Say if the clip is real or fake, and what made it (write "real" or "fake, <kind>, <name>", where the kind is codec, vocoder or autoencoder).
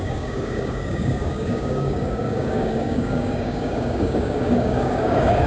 fake, codec, DAC